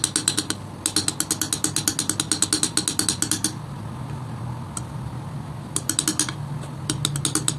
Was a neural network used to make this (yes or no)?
no